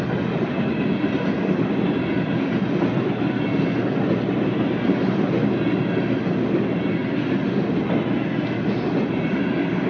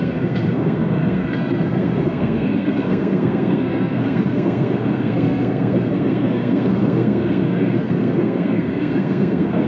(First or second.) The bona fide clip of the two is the first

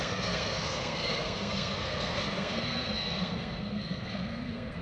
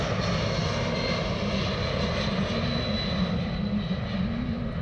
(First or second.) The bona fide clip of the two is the second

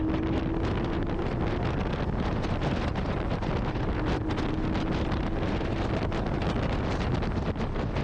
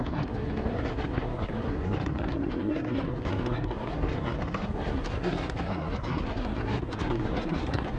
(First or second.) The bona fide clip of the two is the first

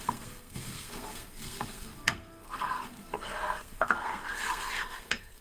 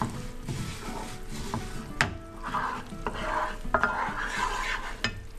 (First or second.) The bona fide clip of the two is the second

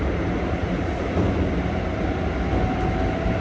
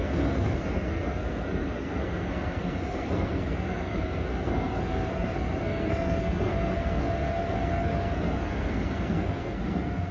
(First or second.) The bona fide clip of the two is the first